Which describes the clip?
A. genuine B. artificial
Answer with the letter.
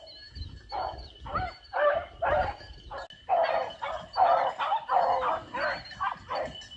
A